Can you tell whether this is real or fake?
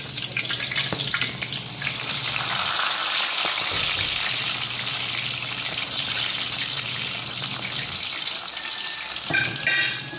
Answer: real